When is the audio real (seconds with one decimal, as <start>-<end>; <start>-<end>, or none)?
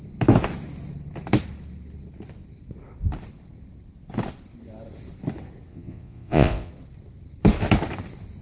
0.0-5.7; 6.7-8.4